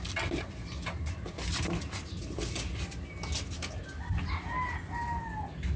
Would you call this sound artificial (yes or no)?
no